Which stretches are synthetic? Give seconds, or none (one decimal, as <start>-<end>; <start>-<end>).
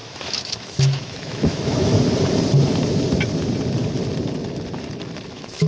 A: 0.0-1.9; 5.3-5.7